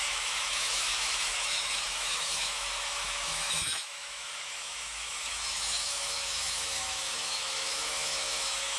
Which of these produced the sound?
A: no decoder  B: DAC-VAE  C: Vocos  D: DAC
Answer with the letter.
B